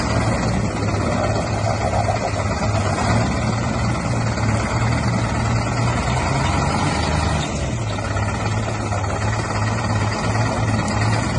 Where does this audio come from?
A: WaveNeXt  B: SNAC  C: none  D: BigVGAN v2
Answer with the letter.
C